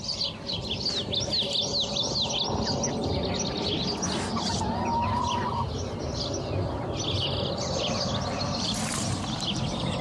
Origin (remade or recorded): recorded